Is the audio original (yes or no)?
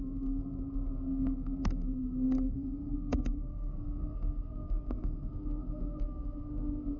no